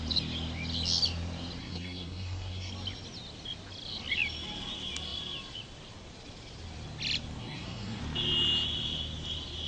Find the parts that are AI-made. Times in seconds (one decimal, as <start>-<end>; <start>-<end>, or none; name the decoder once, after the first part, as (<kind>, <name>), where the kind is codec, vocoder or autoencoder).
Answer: 1.6-2.7 (codec, SNAC); 7.4-8.0